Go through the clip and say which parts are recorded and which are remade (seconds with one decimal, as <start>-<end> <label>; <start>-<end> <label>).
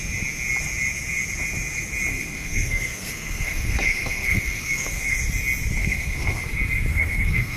0.0-2.1 recorded; 2.1-5.2 remade; 5.2-5.8 recorded; 5.8-6.4 remade; 6.4-6.9 recorded; 6.9-7.6 remade